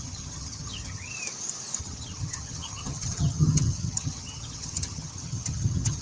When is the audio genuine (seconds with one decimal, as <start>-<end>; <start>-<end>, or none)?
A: 1.1-1.8

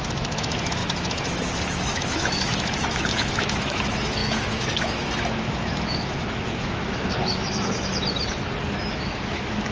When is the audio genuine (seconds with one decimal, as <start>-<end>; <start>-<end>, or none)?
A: 7.9-8.9

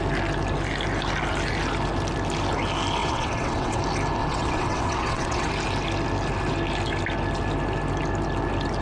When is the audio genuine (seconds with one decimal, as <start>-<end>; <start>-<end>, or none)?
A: 0.0-3.0; 3.8-4.2; 5.5-8.8

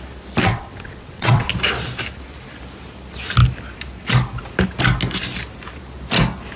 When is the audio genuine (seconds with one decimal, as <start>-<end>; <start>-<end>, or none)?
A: 0.0-0.4; 1.5-6.6